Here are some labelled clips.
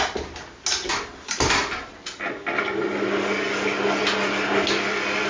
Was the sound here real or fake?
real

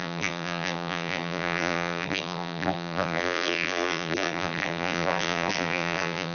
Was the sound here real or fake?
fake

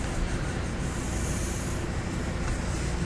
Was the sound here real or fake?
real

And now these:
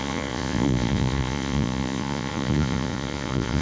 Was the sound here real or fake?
fake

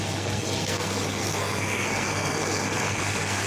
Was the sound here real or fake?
fake